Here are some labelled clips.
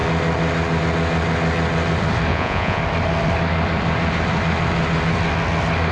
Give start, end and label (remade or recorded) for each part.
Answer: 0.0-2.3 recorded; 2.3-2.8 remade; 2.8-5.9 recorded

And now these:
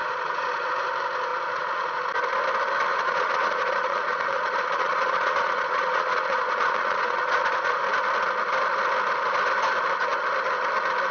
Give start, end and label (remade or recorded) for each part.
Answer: 0.0-0.7 remade; 0.7-1.3 recorded; 1.3-2.1 remade; 2.1-2.9 recorded; 2.9-7.8 remade; 7.8-11.1 recorded

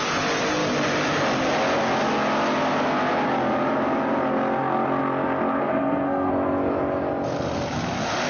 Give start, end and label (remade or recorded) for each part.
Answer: 0.0-5.6 recorded; 5.6-6.3 remade; 6.3-8.3 recorded

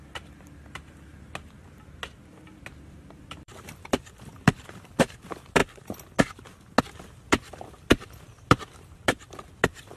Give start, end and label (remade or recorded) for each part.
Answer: 0.0-1.1 remade; 1.1-2.7 recorded; 2.7-5.6 remade; 5.6-6.8 recorded; 6.8-10.0 remade

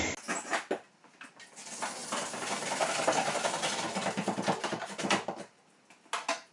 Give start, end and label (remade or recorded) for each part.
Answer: 0.0-6.5 recorded

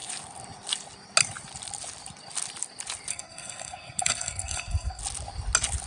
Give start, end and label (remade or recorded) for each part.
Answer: 0.0-3.1 recorded; 3.1-5.0 remade; 5.0-5.9 recorded

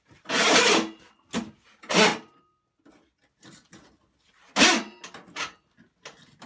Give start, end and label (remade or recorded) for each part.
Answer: 0.0-6.5 recorded